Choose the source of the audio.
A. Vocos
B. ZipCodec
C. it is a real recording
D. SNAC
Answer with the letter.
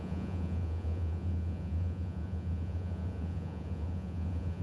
A